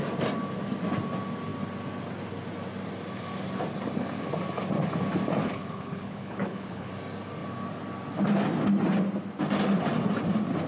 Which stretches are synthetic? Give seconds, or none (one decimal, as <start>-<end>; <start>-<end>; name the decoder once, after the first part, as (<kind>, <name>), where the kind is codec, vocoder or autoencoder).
5.4-6.9 (codec, HILCodec)